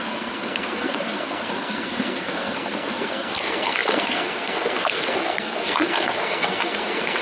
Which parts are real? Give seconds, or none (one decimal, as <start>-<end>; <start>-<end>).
none